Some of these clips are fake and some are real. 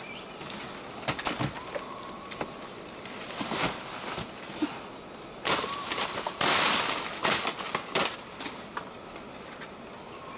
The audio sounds real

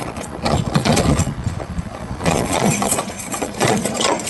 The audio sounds fake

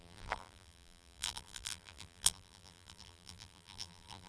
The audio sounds fake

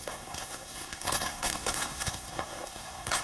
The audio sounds fake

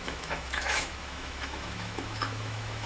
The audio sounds fake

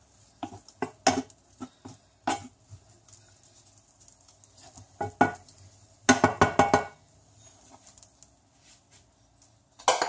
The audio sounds real